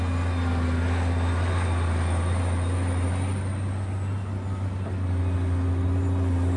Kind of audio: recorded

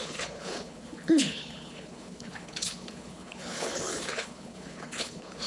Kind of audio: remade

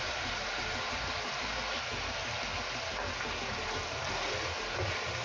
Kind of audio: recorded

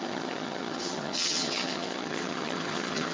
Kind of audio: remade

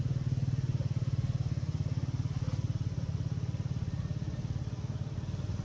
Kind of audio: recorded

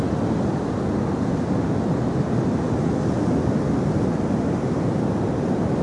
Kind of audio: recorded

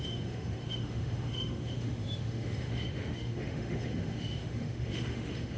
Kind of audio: remade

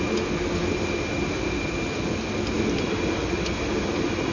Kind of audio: recorded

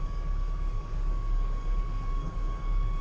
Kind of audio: remade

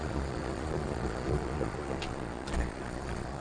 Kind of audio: remade